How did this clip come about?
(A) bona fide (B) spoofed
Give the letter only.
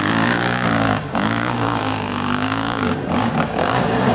B